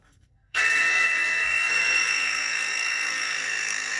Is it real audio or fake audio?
fake